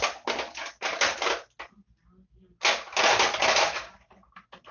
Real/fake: real